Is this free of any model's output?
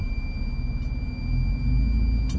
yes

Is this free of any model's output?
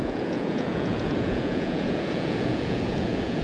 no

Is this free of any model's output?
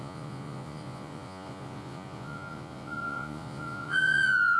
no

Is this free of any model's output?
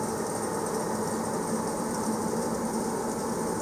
yes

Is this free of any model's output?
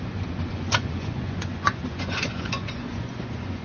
no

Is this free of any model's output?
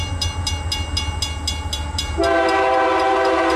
yes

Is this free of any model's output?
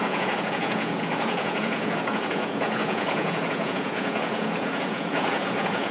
no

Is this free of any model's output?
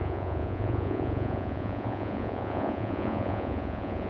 no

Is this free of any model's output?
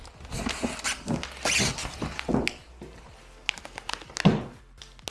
yes